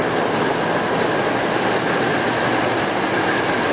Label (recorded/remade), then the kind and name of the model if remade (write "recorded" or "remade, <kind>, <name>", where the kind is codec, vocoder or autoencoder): recorded